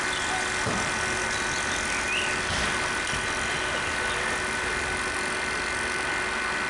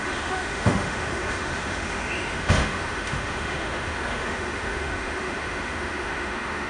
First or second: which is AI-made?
second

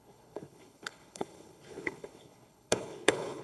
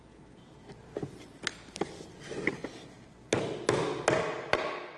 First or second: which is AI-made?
first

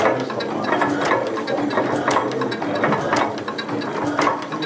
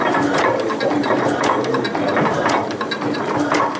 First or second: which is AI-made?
second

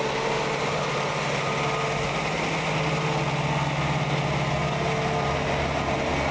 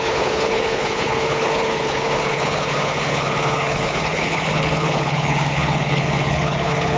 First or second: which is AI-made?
second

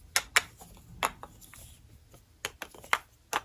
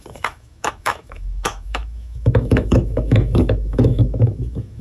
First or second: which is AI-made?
second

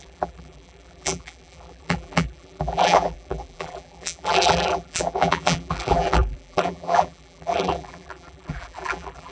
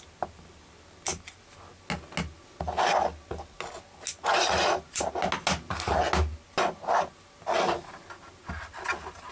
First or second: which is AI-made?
first